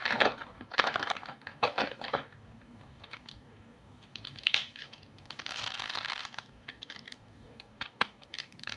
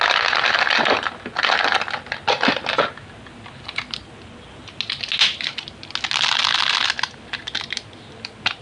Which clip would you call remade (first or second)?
first